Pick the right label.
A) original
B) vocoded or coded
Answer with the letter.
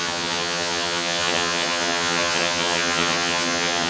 B